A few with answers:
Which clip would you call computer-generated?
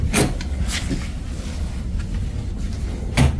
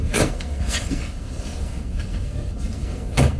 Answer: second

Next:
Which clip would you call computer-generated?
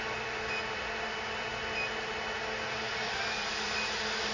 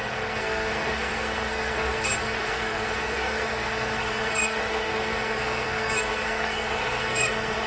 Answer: second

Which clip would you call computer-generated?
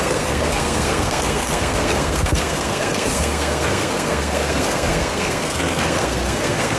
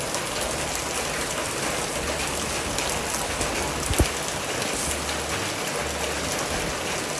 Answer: first